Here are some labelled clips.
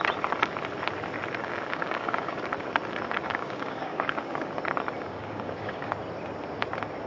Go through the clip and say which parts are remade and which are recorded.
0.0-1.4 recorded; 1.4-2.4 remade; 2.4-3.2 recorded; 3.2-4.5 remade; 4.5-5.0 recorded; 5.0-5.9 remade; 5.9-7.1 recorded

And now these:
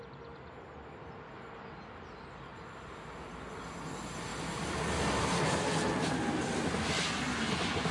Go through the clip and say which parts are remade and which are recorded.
0.0-7.9 recorded

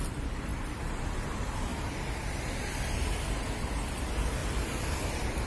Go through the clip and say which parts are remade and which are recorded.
0.0-5.5 recorded

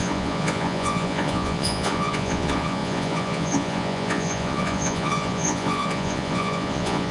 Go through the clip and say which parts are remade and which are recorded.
0.0-7.1 remade